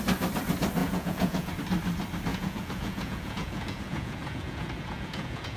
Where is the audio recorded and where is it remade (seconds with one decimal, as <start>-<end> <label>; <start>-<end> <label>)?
0.0-0.8 recorded; 0.8-1.5 remade; 1.5-2.3 recorded; 2.3-5.6 remade